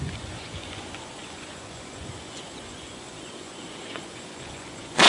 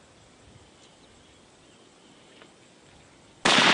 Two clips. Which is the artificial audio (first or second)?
first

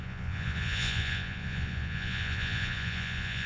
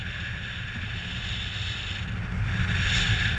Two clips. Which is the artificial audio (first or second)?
first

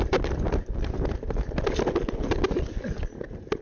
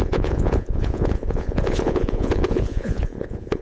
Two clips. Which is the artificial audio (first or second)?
second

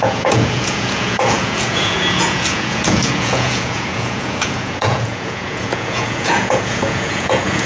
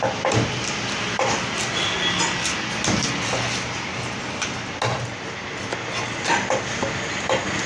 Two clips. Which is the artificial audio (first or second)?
first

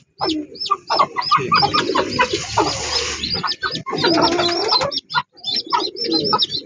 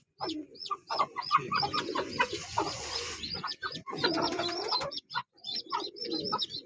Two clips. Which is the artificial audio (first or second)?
second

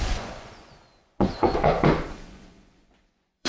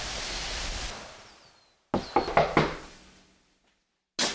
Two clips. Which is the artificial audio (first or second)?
first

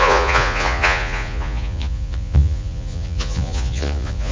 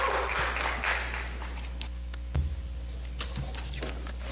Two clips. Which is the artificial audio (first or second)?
first